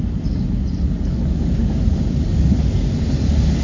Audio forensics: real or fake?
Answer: real